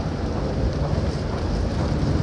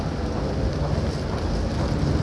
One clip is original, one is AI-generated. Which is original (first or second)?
second